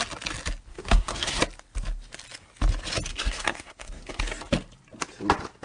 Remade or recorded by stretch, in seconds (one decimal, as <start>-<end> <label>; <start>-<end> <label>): 0.0-0.7 recorded; 0.7-1.4 remade; 1.4-3.1 recorded; 3.1-4.2 remade; 4.2-5.6 recorded

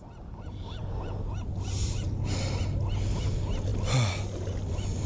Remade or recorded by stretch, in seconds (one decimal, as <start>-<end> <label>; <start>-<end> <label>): 0.0-5.1 recorded

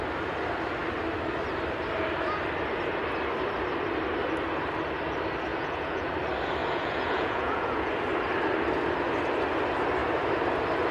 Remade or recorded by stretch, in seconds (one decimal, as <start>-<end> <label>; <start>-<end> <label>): 0.0-5.5 recorded; 5.5-6.1 remade; 6.1-6.6 recorded; 6.6-7.9 remade; 7.9-10.9 recorded

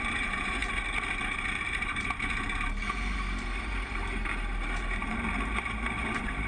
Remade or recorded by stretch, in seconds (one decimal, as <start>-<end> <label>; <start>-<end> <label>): 0.0-0.6 remade; 0.6-1.6 recorded; 1.6-6.5 remade

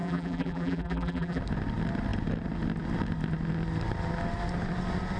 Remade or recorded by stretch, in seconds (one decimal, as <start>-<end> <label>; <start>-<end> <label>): 0.0-1.4 remade; 1.4-5.2 recorded

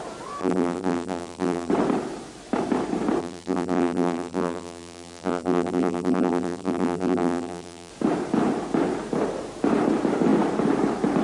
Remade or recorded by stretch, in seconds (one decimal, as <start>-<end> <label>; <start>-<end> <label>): 0.0-0.4 recorded; 0.4-1.7 remade; 1.7-3.2 recorded; 3.2-7.9 remade; 7.9-11.2 recorded